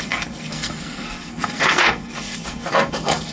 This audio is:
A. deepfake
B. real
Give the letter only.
A